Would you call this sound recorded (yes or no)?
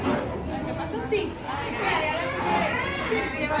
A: yes